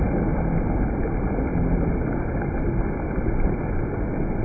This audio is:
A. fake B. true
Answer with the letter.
B